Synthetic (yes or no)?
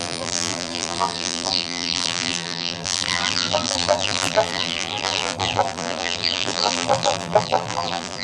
yes